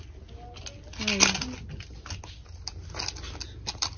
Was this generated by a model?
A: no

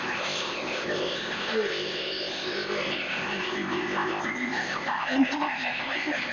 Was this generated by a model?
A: yes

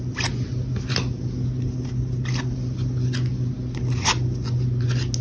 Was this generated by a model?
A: no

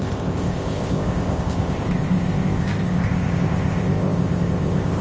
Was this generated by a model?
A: yes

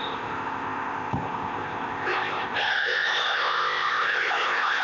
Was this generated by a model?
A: yes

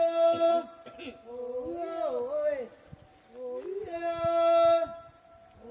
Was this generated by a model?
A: no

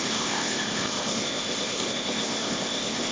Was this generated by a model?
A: yes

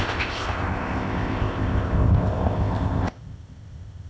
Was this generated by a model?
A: yes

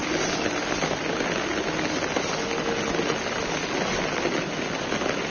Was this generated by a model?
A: no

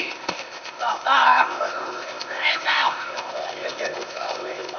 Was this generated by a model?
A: yes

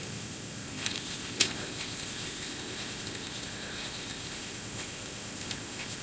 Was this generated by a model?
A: yes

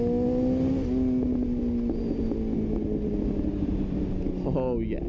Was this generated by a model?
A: no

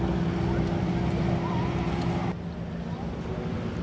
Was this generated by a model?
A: no